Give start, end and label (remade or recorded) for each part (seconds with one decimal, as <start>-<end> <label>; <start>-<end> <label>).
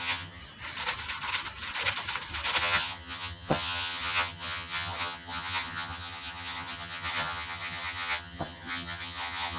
0.0-0.4 remade; 0.4-2.6 recorded; 2.6-9.6 remade